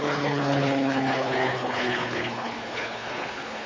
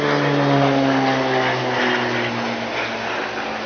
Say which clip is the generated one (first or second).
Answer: first